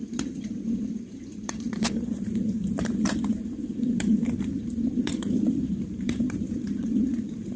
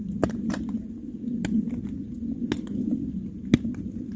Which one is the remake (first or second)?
first